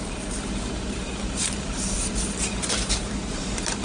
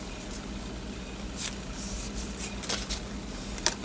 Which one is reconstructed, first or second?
first